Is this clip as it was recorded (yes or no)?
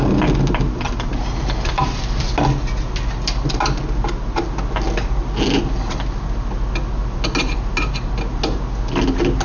yes